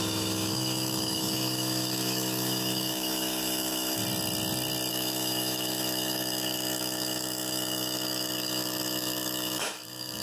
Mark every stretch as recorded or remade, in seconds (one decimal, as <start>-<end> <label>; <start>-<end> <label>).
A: 0.0-4.0 remade; 4.0-4.9 recorded; 4.9-10.2 remade